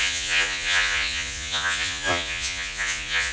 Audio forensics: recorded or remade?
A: remade